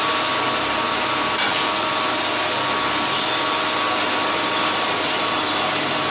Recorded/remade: recorded